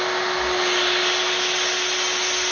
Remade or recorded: recorded